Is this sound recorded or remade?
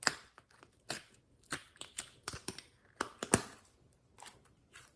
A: recorded